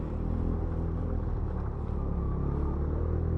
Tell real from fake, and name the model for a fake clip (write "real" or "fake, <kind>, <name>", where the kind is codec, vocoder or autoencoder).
real